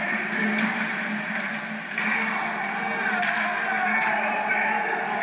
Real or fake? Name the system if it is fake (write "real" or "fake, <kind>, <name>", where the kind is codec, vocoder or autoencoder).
real